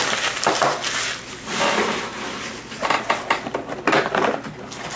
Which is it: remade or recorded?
recorded